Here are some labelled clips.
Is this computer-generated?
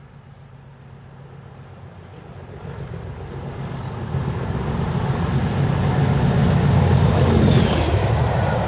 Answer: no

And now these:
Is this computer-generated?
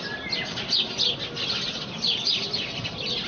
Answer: no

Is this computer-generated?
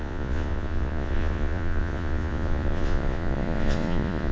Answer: yes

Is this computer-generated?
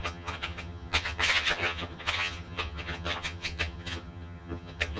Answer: yes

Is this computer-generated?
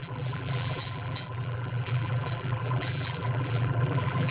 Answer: yes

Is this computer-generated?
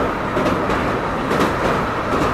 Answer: no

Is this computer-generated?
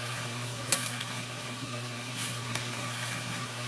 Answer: yes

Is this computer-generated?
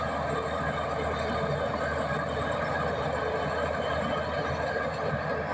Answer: no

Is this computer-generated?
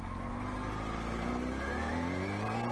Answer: no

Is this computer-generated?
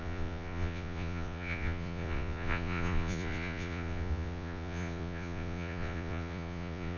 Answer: yes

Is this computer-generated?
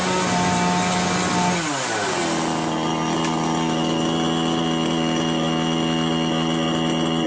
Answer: no